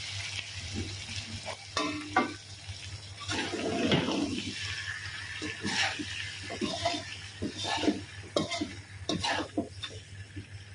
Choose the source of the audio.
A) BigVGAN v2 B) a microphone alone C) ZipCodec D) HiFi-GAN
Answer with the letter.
B